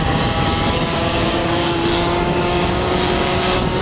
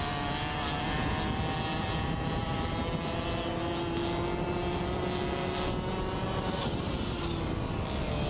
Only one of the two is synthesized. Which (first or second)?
first